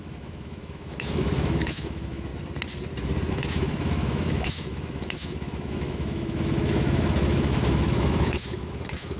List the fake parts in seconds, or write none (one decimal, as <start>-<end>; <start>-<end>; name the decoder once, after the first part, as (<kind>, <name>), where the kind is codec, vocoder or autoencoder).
0.0-2.3 (autoencoder, DAC-VAE); 3.3-9.2